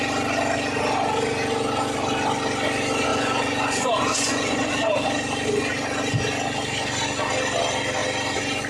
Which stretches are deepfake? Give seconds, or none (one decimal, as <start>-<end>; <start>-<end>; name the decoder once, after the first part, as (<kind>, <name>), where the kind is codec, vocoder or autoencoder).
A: 3.1-4.7 (vocoder, Vocos)